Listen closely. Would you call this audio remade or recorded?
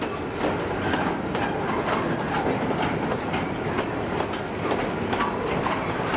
recorded